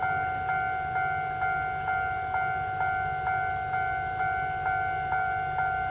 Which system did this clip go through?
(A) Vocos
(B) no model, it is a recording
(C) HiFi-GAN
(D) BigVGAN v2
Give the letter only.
B